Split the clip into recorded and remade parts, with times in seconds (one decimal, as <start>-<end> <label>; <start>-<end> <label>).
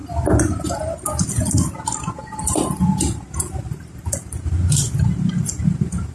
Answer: 0.0-2.1 recorded; 2.1-4.8 remade; 4.8-5.5 recorded; 5.5-6.1 remade